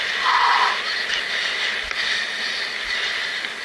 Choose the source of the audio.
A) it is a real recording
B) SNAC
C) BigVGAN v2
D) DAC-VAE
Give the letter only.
A